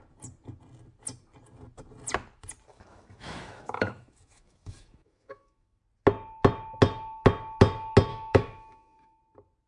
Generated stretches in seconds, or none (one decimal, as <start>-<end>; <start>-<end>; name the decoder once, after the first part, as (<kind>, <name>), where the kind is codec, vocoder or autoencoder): 2.7-5.8 (autoencoder, DAC-VAE); 8.1-9.2